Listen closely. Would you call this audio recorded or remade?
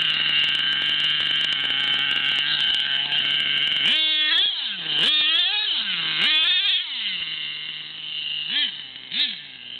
recorded